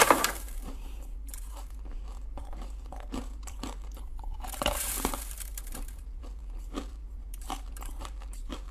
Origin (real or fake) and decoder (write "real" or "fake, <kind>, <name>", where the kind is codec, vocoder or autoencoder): fake, vocoder, BigVGAN v2